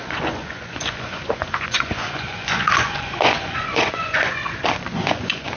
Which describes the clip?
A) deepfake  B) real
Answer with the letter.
A